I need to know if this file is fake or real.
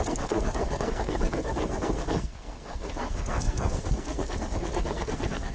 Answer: fake